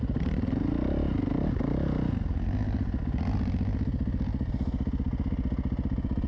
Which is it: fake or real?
real